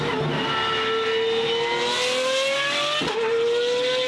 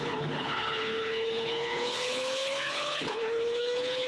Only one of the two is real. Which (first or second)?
first